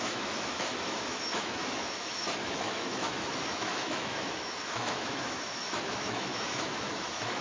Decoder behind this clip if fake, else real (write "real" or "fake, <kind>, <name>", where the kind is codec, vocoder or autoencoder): fake, autoencoder, DAC-VAE